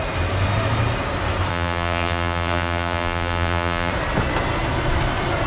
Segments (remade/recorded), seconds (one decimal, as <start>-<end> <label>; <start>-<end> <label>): 0.0-1.5 recorded; 1.5-3.9 remade; 3.9-5.5 recorded